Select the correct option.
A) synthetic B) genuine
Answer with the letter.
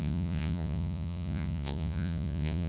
A